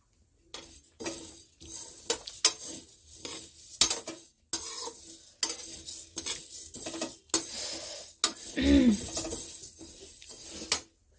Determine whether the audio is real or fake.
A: real